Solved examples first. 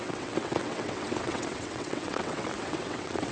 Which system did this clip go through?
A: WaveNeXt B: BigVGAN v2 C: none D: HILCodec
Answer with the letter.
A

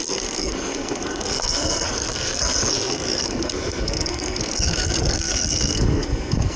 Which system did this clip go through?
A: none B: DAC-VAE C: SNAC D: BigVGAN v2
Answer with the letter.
C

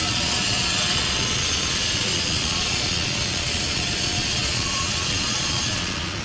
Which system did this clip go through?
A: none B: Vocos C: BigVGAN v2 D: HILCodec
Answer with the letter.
B